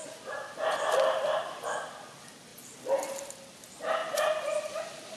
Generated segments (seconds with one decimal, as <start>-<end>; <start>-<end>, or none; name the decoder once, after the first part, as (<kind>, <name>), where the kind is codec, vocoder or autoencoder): 2.5-3.3 (vocoder, BigVGAN v2); 4.0-4.8